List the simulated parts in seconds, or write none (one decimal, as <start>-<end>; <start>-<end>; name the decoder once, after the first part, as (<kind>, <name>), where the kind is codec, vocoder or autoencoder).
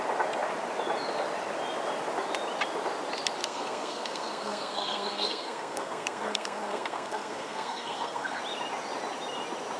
3.4-8.4 (codec, SNAC)